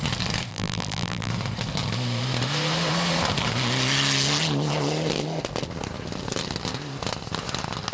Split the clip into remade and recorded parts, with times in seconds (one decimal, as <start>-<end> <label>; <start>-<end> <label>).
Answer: 0.0-0.5 recorded; 0.5-1.3 remade; 1.3-7.9 recorded